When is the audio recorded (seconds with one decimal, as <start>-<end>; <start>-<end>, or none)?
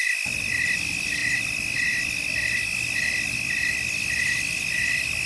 0.0-5.3